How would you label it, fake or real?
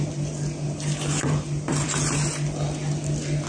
real